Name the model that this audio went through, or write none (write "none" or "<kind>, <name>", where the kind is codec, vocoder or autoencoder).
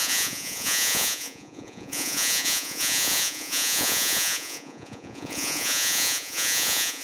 vocoder, Vocos